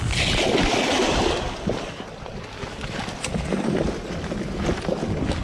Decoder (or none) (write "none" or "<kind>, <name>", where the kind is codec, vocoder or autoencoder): none